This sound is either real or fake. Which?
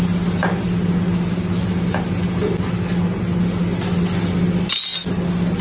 real